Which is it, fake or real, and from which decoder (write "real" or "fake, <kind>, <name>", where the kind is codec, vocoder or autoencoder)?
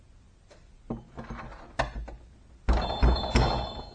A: real